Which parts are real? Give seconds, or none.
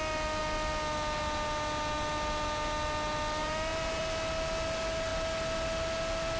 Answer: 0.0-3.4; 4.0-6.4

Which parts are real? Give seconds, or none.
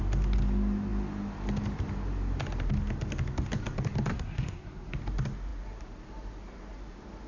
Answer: 0.0-4.1; 4.9-7.3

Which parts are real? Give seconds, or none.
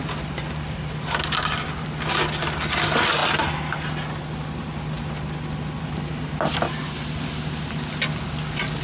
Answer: 0.0-8.8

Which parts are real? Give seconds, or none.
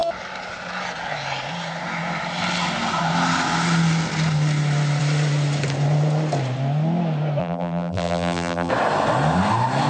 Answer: 0.0-7.4; 8.7-9.9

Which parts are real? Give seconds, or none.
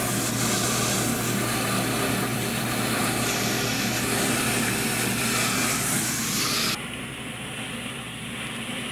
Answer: 0.0-2.3; 3.0-8.9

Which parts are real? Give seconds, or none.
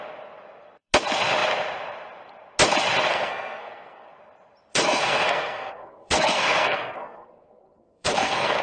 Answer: 0.0-3.1; 4.1-4.7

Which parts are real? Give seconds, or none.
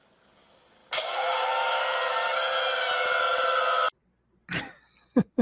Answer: 0.0-5.4